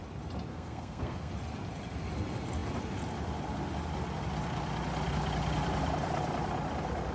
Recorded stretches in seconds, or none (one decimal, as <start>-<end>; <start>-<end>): 0.0-0.5; 1.3-7.1